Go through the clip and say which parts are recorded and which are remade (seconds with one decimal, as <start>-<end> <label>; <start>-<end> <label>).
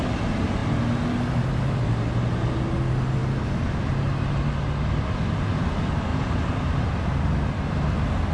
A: 0.0-6.1 recorded; 6.1-6.9 remade; 6.9-8.3 recorded